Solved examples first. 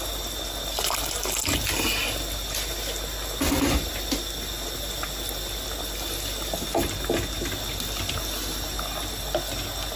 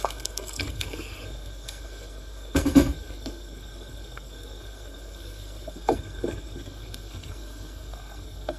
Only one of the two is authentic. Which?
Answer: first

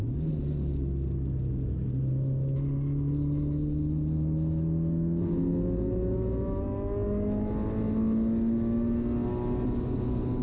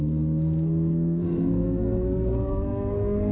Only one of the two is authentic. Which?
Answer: first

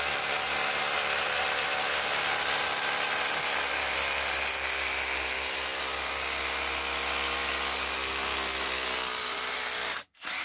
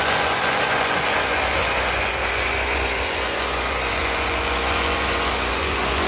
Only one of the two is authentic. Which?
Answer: first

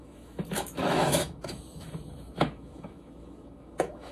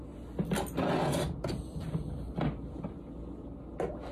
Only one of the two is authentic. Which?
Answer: second